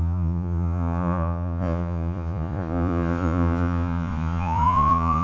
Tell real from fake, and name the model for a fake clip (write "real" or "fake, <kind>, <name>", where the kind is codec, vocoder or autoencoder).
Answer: fake, vocoder, Vocos